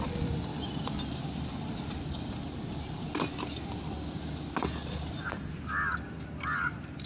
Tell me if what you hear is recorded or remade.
recorded